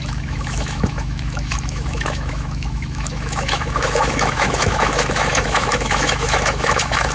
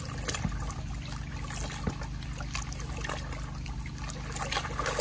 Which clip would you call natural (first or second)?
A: second